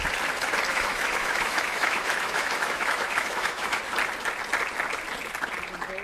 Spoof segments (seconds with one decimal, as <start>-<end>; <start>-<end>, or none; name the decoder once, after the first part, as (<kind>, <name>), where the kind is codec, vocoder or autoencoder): 0.7-3.8 (autoencoder, DAC-VAE)